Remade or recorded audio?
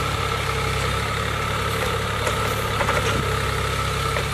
recorded